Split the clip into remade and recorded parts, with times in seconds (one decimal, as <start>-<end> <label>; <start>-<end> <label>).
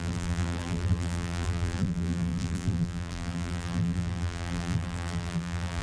0.0-5.8 remade